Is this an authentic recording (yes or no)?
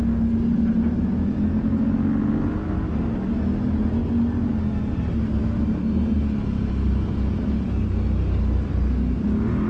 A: yes